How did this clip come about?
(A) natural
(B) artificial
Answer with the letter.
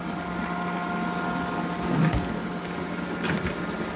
A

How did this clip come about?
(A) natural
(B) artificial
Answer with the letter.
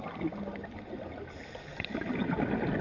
A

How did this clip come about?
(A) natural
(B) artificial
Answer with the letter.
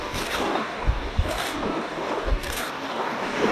B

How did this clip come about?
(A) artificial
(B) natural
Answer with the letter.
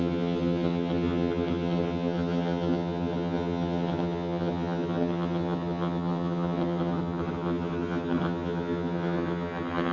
A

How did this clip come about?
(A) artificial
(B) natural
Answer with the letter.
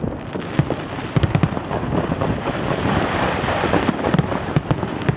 A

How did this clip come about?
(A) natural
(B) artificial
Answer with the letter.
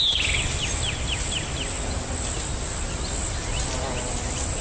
A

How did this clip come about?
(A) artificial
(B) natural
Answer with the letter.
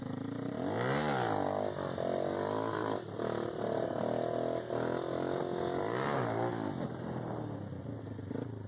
B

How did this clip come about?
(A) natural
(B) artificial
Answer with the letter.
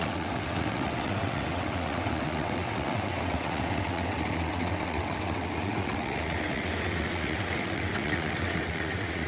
B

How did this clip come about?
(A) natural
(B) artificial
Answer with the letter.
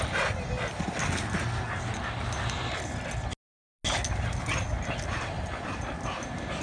A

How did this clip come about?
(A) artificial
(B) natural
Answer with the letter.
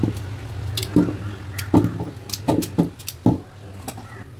B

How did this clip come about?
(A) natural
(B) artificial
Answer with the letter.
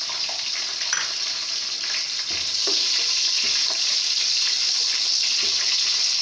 A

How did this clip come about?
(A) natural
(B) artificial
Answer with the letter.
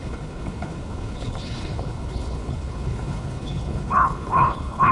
B